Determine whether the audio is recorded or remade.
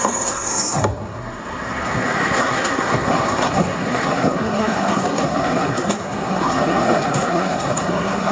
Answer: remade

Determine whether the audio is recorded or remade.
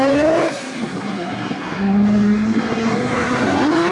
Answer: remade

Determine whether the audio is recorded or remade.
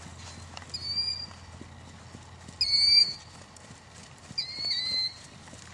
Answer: recorded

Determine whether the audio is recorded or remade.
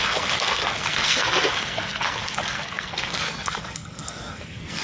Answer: remade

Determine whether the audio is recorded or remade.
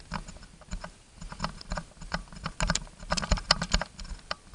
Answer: recorded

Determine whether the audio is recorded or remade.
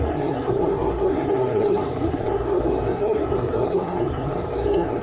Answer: remade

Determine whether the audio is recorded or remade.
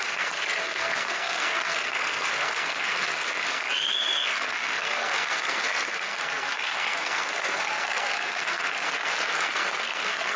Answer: remade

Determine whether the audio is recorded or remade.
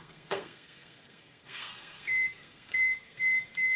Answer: remade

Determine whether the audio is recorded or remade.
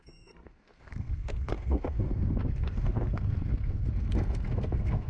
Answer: remade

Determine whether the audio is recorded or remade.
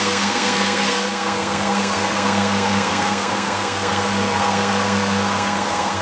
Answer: remade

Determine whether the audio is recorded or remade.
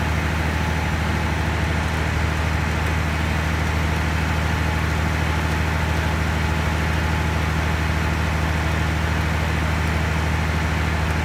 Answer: recorded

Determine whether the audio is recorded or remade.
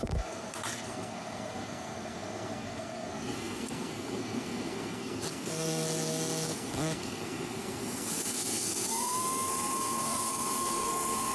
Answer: remade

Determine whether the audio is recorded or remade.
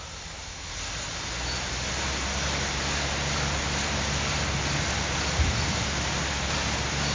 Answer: recorded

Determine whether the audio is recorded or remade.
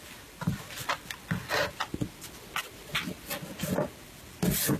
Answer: recorded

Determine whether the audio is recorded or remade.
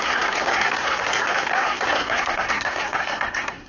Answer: remade